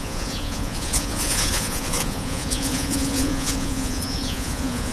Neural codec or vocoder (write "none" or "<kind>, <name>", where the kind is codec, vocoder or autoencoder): vocoder, Vocos